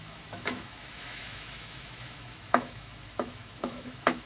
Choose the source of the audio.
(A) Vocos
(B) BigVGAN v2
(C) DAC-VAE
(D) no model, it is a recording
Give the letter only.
C